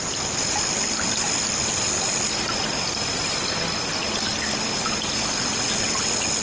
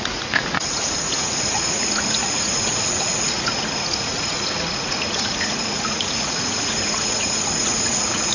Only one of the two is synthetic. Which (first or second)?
second